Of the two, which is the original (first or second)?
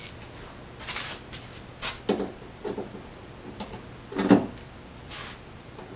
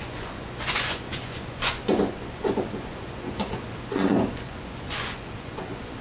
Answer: first